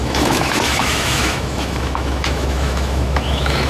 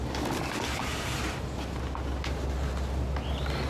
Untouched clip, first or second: second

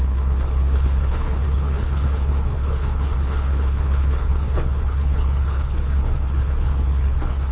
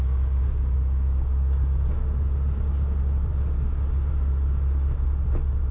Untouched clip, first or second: second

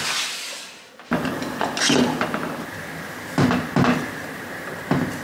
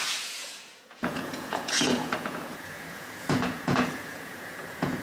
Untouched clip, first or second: first